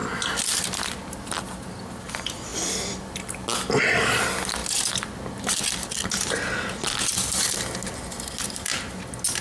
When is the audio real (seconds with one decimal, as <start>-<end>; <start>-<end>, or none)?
0.0-9.4